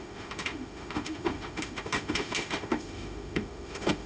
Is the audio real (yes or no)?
no